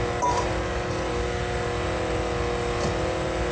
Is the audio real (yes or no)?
yes